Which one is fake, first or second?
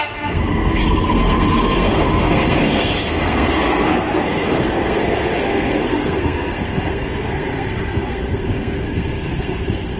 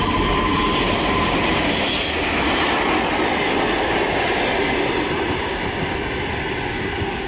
first